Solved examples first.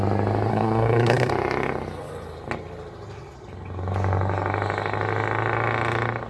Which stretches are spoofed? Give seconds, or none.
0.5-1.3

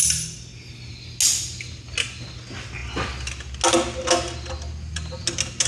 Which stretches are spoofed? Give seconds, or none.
none

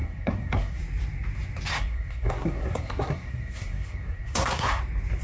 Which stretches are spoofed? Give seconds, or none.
0.0-0.8; 1.7-4.8

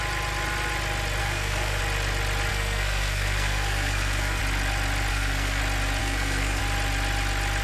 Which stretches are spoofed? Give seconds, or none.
1.2-1.8; 2.5-4.4; 5.1-5.6; 6.0-6.6

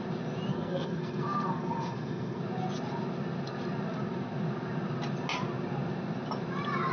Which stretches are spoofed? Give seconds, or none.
0.5-2.4

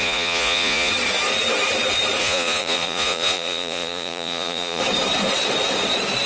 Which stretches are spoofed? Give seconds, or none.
0.0-0.9; 2.2-4.8

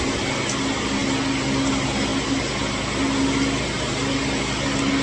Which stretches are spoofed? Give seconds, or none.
none

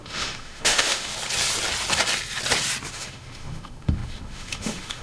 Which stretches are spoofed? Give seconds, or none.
0.0-1.1; 2.9-5.0